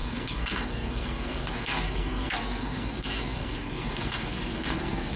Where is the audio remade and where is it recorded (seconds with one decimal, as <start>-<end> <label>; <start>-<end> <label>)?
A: 0.0-5.2 remade

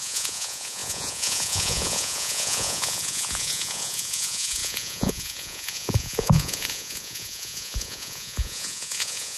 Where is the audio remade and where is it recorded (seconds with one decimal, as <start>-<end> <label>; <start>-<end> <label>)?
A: 0.0-9.4 remade

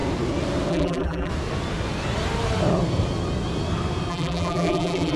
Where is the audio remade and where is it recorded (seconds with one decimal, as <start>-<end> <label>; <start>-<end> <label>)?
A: 0.0-0.7 recorded; 0.7-1.3 remade; 1.3-4.1 recorded; 4.1-5.2 remade

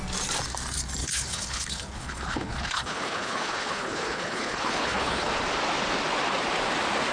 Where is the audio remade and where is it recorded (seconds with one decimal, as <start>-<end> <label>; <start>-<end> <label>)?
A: 0.0-1.0 recorded; 1.0-5.3 remade; 5.3-7.1 recorded

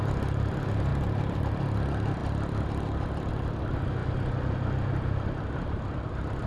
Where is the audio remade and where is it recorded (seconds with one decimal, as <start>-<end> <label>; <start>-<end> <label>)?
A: 0.0-6.5 recorded

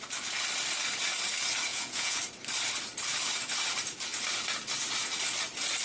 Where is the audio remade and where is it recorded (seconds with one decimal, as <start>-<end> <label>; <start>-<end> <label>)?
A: 0.0-1.7 recorded; 1.7-2.2 remade; 2.2-5.8 recorded